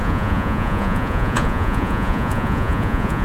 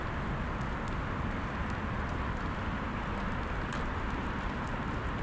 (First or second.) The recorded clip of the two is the second